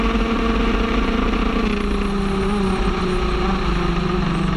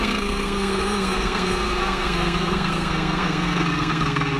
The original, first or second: first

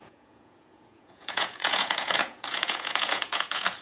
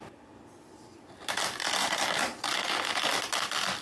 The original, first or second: second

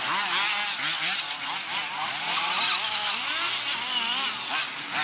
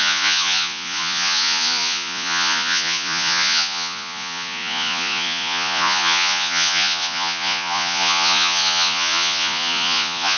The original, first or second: first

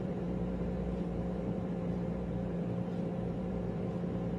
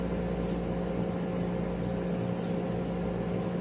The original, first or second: second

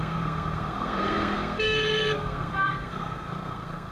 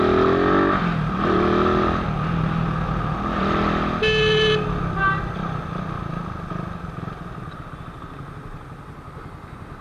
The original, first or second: second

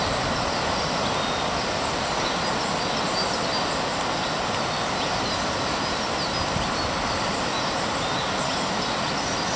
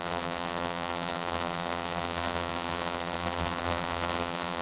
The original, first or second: first